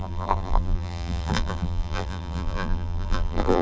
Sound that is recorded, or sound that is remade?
remade